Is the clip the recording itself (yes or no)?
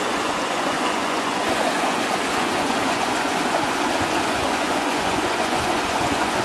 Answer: no